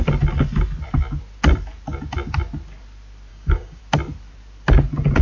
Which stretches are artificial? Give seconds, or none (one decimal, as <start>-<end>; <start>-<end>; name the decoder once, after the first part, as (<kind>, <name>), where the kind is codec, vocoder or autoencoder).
3.3-3.8 (codec, DAC)